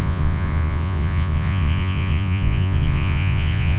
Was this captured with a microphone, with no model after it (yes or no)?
no